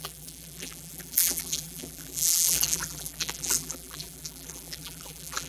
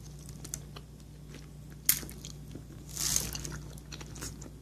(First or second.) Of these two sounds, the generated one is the first